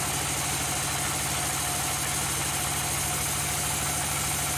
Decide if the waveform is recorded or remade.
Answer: recorded